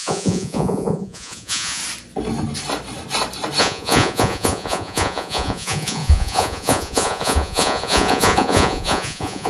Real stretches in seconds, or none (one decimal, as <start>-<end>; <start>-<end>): 1.8-3.6